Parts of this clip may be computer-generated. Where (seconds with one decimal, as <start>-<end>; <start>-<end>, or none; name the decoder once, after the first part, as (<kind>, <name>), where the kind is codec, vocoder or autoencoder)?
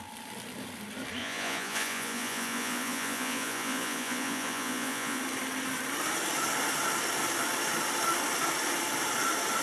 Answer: 1.2-5.2 (vocoder, Vocos)